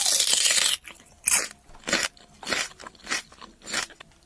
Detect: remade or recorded recorded